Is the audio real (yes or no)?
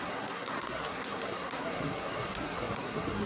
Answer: no